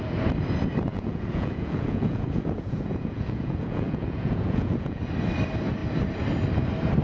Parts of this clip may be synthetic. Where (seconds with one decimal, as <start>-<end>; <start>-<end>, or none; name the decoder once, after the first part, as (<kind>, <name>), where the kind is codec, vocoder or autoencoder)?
0.9-5.1 (vocoder, Vocos)